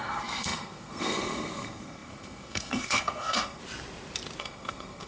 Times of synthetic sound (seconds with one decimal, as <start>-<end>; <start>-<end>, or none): 0.0-3.6; 4.4-5.1